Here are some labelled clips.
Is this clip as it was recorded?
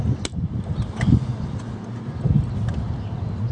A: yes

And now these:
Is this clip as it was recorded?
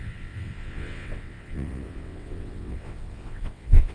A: no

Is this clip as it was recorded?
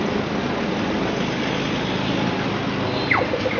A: yes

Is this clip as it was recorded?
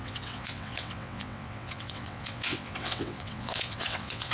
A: no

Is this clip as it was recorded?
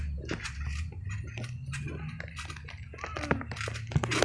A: yes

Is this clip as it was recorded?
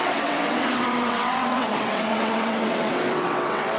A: no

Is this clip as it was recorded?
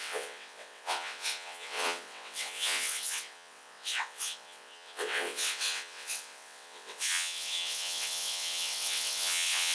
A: no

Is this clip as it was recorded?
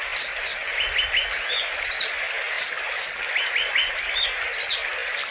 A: yes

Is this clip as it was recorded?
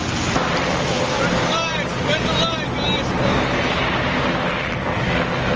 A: yes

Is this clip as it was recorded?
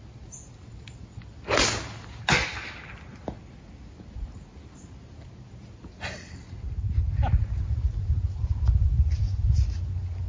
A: yes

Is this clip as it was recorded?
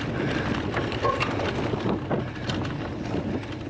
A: yes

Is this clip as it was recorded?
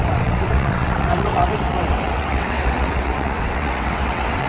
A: no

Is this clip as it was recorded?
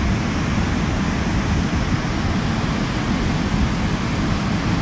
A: yes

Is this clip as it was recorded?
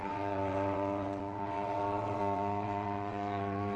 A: no